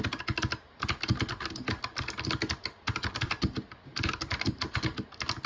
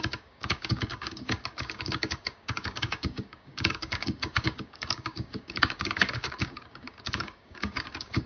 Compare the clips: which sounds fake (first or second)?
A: second